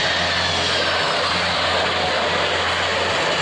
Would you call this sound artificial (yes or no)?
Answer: no